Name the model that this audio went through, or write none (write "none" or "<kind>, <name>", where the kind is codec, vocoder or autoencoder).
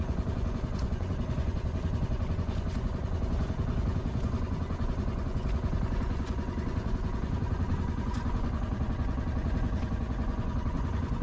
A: vocoder, Vocos